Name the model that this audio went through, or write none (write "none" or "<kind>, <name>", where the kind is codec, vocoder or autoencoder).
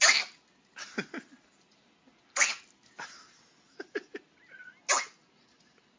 none